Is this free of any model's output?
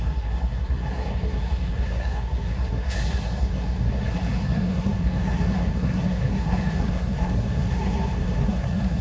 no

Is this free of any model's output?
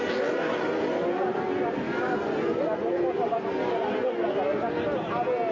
yes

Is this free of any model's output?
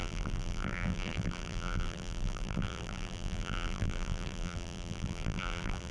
no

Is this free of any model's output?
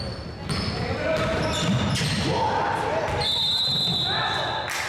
yes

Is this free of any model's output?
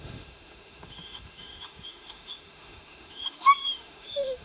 no